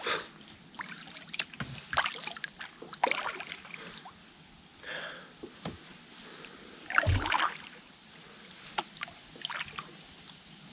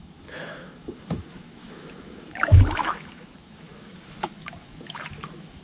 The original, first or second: first